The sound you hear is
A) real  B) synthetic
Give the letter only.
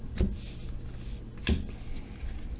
A